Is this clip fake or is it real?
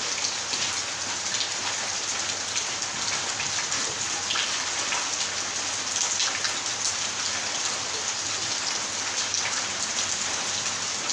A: real